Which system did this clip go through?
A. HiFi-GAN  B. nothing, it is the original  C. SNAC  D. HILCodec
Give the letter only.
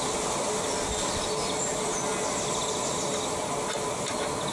B